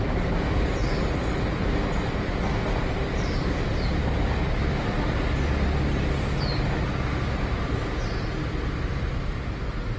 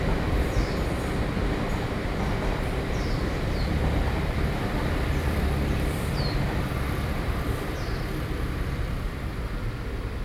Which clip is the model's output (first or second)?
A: second